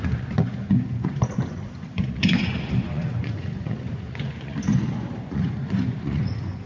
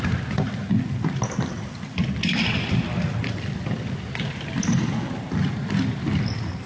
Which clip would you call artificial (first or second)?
first